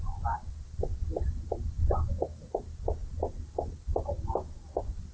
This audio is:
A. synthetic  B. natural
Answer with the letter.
B